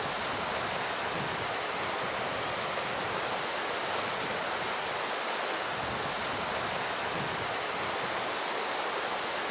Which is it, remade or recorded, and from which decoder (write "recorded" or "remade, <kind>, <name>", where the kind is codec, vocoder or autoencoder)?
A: recorded